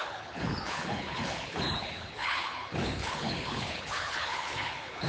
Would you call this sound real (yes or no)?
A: no